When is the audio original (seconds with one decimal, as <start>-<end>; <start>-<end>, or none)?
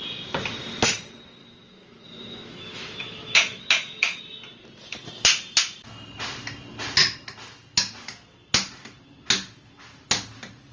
0.0-1.4; 4.2-10.7